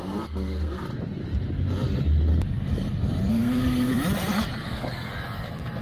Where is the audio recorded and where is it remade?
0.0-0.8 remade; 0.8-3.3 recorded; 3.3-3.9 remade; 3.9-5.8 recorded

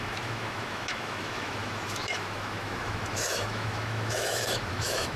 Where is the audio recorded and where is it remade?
0.0-5.2 remade

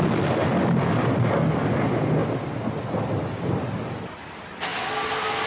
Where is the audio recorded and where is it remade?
0.0-5.5 recorded

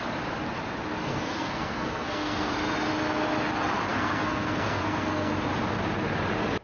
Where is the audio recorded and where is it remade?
0.0-1.1 recorded; 1.1-2.5 remade; 2.5-3.9 recorded; 3.9-5.3 remade; 5.3-6.6 recorded

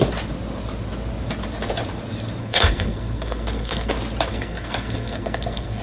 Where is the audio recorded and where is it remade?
0.0-2.4 recorded; 2.4-3.9 remade; 3.9-4.3 recorded; 4.3-5.8 remade

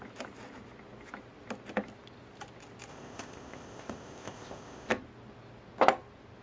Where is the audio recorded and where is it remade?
0.0-2.9 recorded; 2.9-4.9 remade; 4.9-6.4 recorded

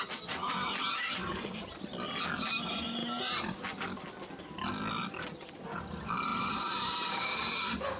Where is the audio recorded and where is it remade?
0.0-8.0 recorded

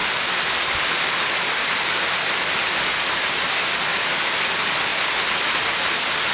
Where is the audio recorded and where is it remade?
0.0-2.6 remade; 2.6-3.9 recorded; 3.9-4.5 remade; 4.5-4.9 recorded; 4.9-5.6 remade; 5.6-6.3 recorded